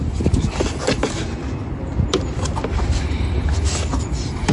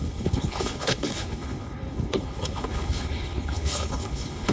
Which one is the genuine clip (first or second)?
first